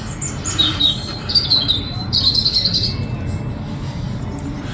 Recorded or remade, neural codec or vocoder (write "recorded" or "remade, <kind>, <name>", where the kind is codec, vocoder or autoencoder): recorded